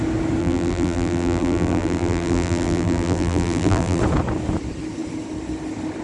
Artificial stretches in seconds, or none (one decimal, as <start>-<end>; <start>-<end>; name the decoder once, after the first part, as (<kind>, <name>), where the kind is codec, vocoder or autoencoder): 0.4-4.0 (vocoder, BigVGAN v2)